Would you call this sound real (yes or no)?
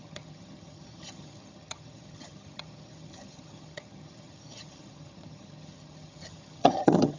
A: no